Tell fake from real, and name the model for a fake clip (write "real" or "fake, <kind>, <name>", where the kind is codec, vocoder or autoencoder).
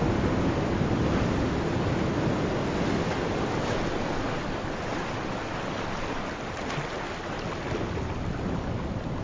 real